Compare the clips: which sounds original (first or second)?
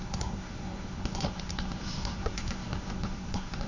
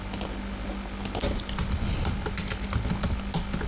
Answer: second